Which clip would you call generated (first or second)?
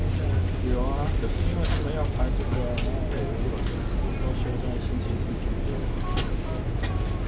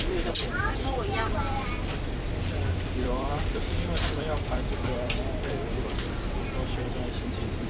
second